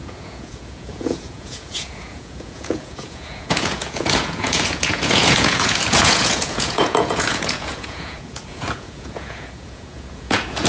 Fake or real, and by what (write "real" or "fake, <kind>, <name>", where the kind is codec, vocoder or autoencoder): fake, vocoder, Vocos